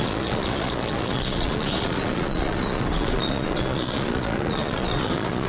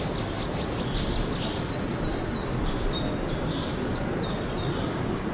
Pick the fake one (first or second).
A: first